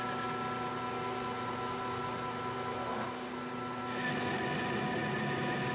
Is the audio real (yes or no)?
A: yes